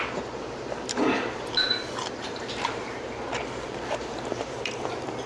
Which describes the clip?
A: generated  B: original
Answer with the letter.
A